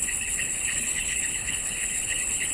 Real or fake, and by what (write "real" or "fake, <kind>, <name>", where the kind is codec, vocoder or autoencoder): fake, codec, HILCodec